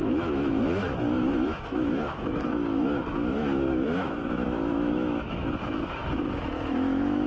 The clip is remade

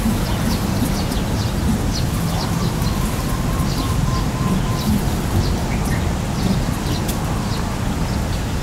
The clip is recorded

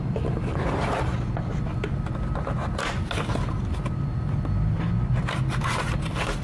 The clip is recorded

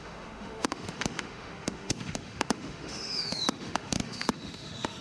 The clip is remade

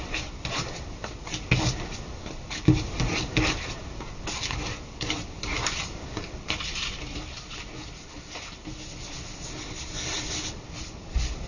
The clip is recorded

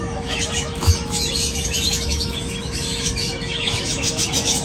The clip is remade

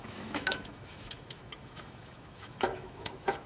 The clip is remade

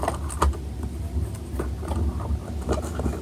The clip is recorded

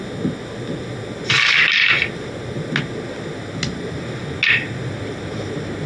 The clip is recorded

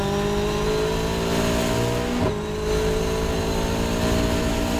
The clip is recorded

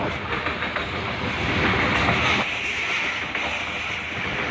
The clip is recorded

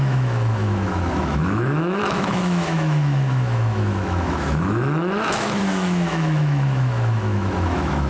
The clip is remade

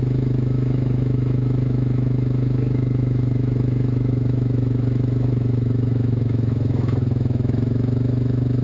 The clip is remade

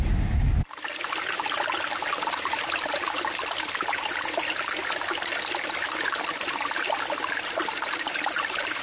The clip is recorded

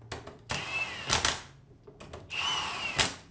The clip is recorded